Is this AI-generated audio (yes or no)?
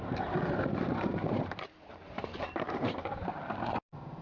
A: yes